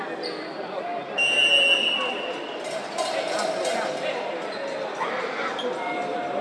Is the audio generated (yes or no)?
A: yes